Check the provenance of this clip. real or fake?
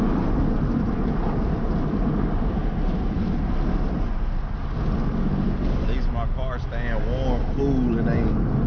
real